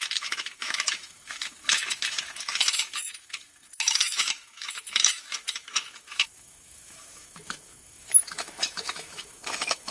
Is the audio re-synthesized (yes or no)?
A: yes